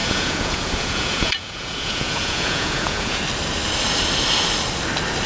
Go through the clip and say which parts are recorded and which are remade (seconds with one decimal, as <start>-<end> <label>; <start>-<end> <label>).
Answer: 0.0-3.2 remade; 3.2-5.3 recorded